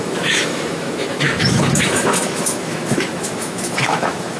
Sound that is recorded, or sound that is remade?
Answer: remade